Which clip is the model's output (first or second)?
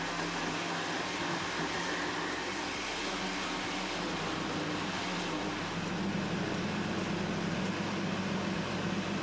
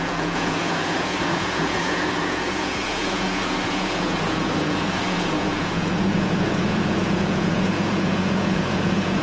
second